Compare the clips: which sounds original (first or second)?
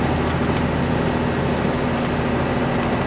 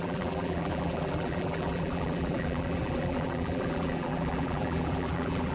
first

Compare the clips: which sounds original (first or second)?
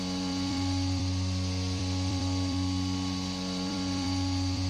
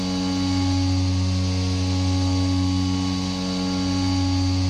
second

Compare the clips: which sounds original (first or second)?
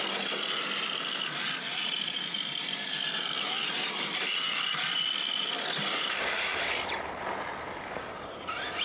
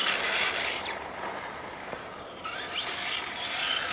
first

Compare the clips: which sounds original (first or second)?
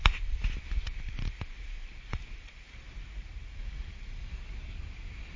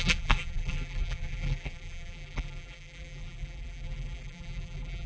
first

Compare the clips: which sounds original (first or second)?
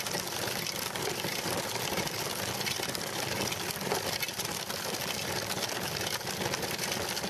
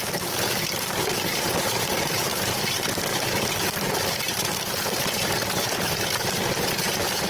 first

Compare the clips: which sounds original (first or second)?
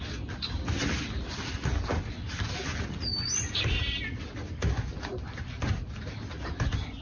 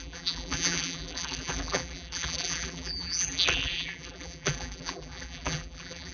first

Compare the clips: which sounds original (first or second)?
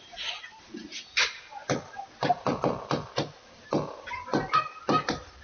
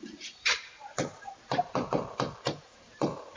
first